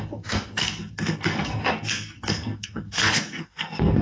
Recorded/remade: remade